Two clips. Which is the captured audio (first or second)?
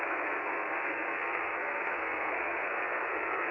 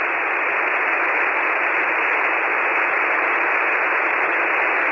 second